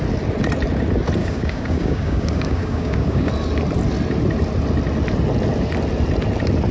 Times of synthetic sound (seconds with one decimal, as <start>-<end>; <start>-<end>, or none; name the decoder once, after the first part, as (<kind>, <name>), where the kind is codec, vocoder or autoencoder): 1.2-3.3 (codec, DAC)